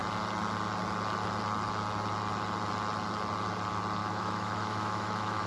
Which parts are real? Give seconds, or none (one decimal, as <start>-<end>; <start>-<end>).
0.0-4.0